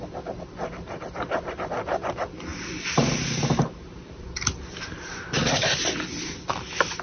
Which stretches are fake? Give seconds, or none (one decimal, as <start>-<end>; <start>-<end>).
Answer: 0.0-2.5; 4.7-7.0